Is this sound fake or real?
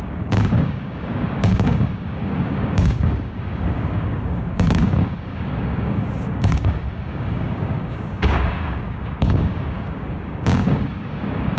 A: fake